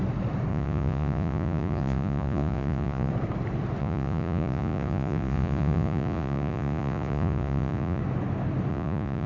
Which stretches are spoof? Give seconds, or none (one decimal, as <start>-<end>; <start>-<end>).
0.5-3.1; 3.8-8.0; 8.7-9.3